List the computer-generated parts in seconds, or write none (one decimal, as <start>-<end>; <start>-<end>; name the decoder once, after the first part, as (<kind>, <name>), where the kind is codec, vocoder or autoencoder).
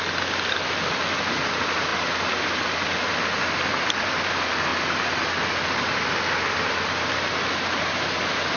none